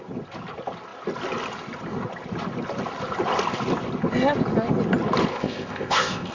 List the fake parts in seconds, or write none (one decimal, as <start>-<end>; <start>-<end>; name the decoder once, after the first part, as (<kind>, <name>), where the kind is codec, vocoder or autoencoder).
5.3-6.3 (codec, ZipCodec)

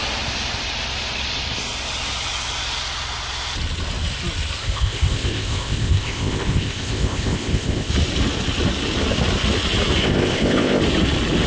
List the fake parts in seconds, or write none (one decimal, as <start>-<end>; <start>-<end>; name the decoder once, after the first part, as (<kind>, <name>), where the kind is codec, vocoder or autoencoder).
4.6-7.9 (codec, ZipCodec); 10.0-10.8

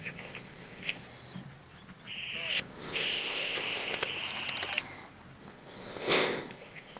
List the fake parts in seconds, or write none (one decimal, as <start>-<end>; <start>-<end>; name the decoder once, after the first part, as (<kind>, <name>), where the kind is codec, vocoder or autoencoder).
0.0-1.0 (codec, ZipCodec); 2.5-4.1; 5.4-7.0

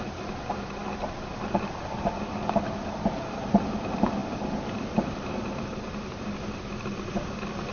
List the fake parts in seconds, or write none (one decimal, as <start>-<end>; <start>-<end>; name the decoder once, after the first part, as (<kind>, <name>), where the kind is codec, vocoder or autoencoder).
none

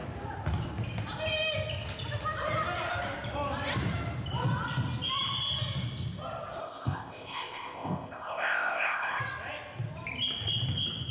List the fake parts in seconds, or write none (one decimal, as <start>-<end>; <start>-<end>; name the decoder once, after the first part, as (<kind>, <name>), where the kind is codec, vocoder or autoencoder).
6.6-9.2 (codec, ZipCodec)

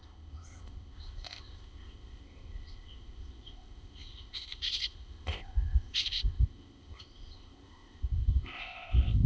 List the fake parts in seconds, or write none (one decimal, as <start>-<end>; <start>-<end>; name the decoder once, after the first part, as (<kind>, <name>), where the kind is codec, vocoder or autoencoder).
0.0-9.3 (codec, ZipCodec)